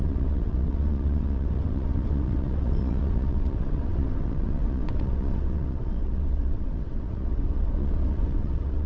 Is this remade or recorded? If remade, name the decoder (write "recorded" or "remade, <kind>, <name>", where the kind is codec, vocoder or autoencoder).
remade, vocoder, WaveNeXt